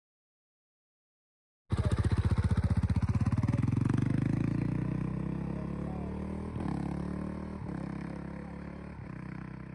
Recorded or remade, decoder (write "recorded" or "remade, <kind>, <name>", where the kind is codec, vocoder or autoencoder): recorded